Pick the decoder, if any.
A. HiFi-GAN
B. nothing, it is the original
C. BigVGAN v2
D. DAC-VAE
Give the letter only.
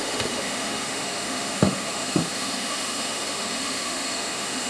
D